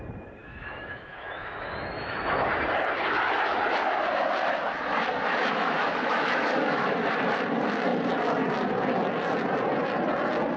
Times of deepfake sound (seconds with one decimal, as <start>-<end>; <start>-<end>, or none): 0.4-2.5; 5.4-6.9

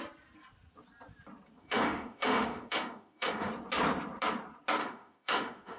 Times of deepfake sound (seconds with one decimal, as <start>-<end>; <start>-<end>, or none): 1.6-3.5; 4.8-5.8

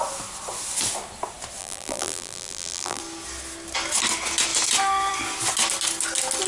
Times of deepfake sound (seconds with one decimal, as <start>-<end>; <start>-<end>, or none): 1.6-3.0

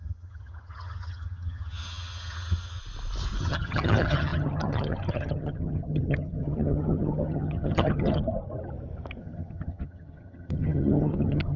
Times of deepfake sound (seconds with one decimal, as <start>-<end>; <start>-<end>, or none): 0.0-2.8; 3.4-8.2; 9.2-11.6